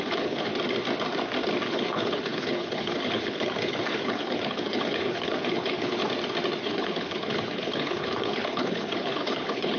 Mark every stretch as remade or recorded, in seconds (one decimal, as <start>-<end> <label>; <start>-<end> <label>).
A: 0.0-0.5 remade; 0.5-1.7 recorded; 1.7-6.0 remade; 6.0-6.6 recorded; 6.6-9.8 remade